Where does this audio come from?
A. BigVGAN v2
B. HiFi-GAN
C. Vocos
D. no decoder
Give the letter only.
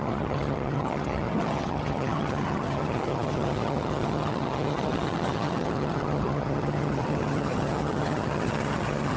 B